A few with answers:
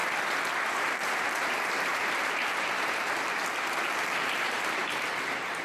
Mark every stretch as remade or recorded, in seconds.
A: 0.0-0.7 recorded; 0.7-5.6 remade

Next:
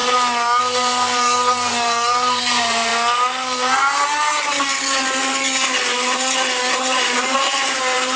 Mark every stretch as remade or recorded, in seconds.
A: 0.0-0.6 recorded; 0.6-2.9 remade; 2.9-6.7 recorded; 6.7-8.2 remade

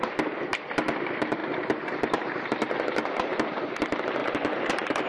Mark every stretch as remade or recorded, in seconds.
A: 0.0-5.1 remade